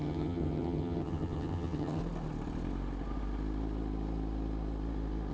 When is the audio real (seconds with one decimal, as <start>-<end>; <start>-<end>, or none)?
2.0-5.3